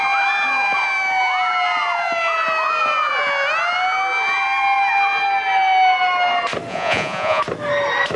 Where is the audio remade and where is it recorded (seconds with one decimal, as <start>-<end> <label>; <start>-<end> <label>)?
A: 0.0-6.7 recorded; 6.7-7.4 remade; 7.4-8.2 recorded